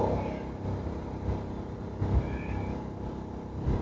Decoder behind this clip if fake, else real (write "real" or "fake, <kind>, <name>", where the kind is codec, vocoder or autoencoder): real